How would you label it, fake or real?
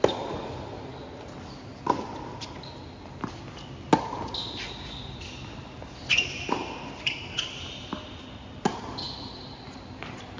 real